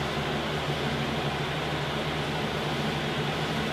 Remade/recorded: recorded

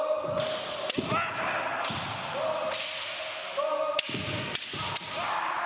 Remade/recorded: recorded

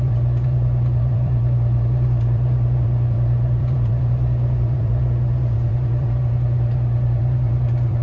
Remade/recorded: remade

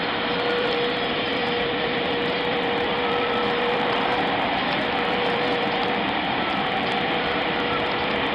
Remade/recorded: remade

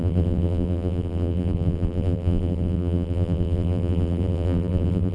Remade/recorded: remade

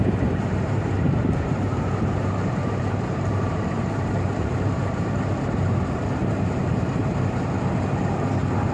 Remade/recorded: remade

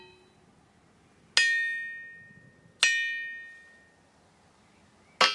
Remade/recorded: recorded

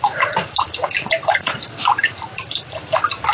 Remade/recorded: recorded